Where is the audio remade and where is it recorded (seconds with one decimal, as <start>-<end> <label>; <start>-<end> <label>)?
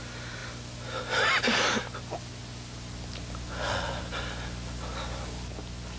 0.0-6.0 recorded